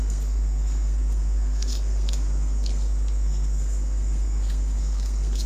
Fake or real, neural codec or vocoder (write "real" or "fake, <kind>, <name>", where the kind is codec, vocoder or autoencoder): fake, codec, SNAC